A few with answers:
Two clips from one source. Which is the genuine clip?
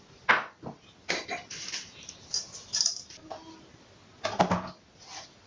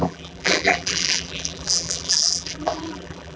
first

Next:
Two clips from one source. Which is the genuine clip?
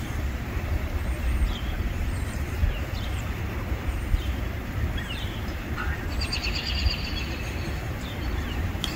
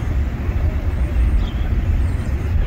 second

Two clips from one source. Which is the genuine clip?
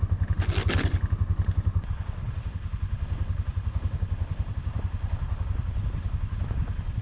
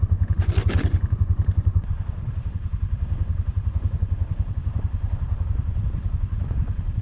first